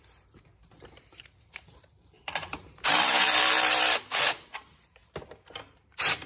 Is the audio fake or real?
fake